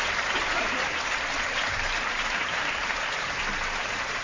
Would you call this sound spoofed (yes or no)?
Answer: yes